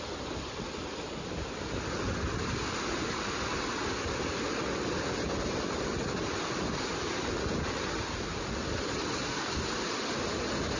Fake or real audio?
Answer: real